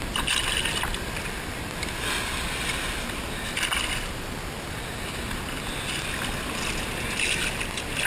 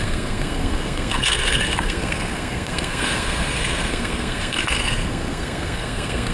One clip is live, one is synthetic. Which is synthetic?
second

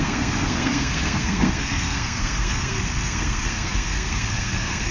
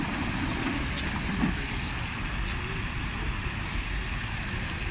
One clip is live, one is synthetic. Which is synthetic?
first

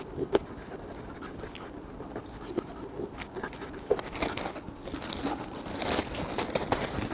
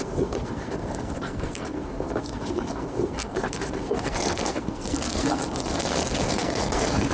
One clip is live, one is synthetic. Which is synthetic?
second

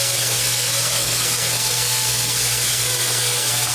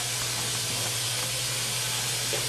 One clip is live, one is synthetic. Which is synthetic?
first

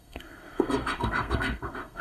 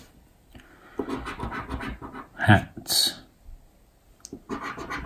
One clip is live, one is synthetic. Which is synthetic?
first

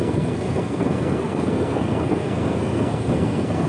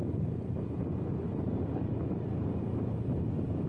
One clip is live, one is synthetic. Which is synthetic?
first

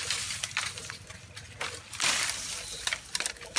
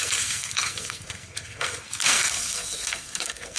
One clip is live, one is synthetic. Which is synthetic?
second